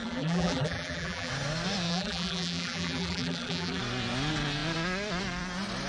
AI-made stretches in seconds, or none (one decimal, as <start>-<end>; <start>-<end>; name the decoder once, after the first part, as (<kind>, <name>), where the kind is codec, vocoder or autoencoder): 0.0-1.3 (vocoder, BigVGAN v2); 1.9-3.8